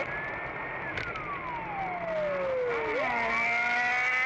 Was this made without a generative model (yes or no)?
yes